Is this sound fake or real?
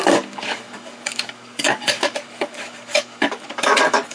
fake